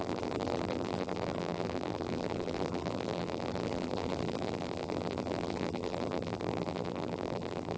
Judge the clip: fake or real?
fake